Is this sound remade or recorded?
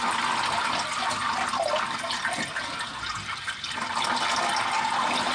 recorded